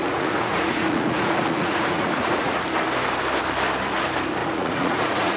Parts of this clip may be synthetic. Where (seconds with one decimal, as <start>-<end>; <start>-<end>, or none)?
0.0-2.6; 4.4-5.4